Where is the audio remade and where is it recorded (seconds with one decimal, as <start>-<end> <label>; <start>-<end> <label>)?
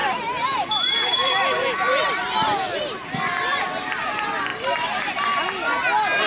0.0-3.6 remade; 3.6-4.5 recorded; 4.5-5.1 remade; 5.1-6.3 recorded